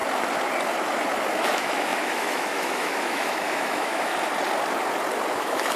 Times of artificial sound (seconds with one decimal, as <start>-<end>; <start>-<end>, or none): 1.4-4.1; 5.3-5.8